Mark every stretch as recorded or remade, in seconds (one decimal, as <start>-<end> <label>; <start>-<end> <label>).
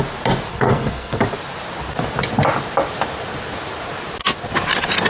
0.0-0.5 recorded; 0.5-1.2 remade; 1.2-5.1 recorded